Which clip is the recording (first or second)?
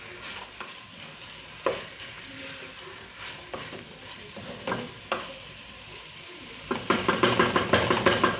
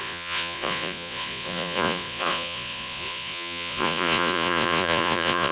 first